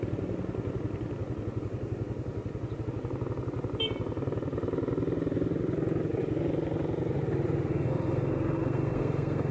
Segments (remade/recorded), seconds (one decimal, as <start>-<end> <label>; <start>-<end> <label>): 0.0-7.7 recorded; 7.7-9.5 remade